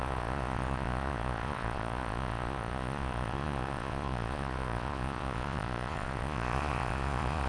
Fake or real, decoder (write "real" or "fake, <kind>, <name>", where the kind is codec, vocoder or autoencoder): fake, vocoder, Vocos